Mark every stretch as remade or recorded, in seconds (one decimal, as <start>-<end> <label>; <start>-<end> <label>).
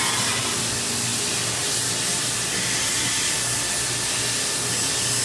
0.0-5.2 recorded